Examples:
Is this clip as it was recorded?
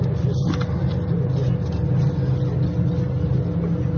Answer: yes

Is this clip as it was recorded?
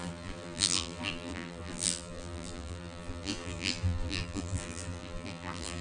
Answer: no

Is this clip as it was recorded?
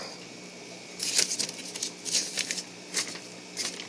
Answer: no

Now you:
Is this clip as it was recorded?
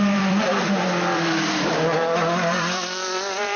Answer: no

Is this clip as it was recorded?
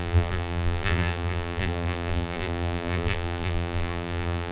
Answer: no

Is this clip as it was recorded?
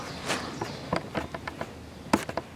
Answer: yes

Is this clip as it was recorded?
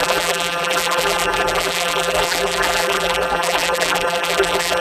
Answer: no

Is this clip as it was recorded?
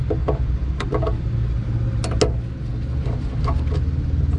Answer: yes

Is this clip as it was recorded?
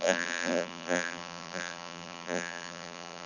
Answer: no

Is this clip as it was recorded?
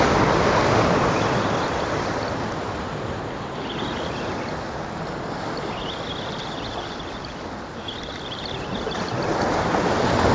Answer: yes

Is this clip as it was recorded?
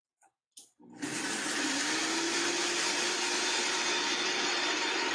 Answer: yes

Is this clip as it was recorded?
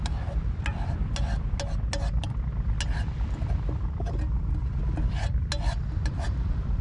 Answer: yes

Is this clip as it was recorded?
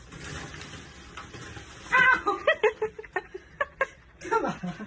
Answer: yes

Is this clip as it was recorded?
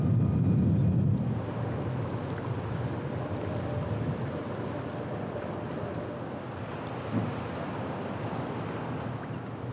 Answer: yes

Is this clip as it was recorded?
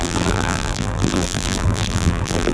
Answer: no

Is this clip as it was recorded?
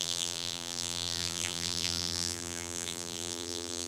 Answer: no